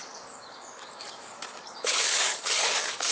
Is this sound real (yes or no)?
no